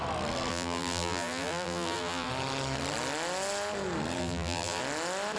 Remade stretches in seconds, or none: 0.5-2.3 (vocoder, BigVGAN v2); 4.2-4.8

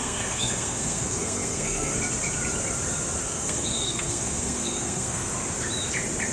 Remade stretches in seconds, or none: 0.0-2.0 (codec, SNAC); 3.2-5.3

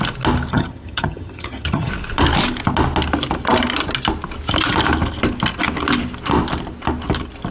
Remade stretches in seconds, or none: 0.5-1.9 (vocoder, HiFi-GAN)

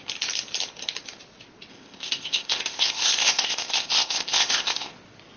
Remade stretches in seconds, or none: 1.7-4.9 (codec, ZipCodec)

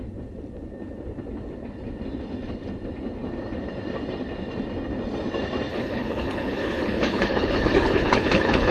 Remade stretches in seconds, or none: 5.7-8.7 (codec, HILCodec)

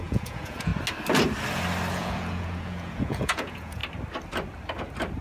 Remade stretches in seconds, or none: 0.0-0.7 (vocoder, Vocos); 1.9-3.8